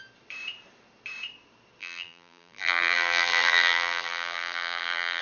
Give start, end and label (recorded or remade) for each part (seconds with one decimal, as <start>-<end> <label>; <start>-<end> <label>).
0.0-1.8 recorded; 1.8-5.2 remade